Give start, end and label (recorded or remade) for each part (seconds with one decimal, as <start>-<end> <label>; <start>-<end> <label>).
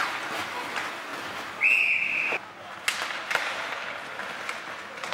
0.0-5.1 recorded